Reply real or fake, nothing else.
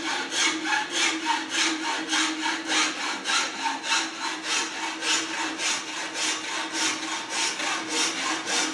real